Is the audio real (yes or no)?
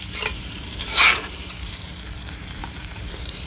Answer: no